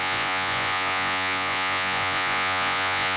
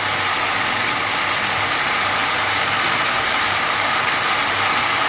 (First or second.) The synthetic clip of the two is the first